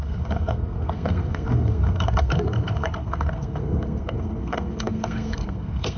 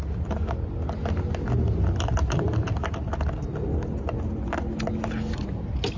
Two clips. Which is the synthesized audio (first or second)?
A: first